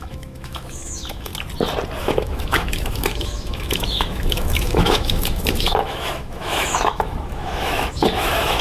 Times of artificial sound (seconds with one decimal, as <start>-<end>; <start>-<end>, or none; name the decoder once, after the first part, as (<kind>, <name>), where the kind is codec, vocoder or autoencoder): 0.0-1.3 (autoencoder, DAC-VAE); 2.0-8.6